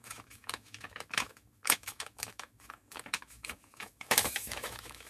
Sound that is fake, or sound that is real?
fake